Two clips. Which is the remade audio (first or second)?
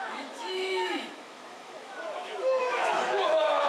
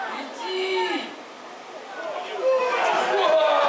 first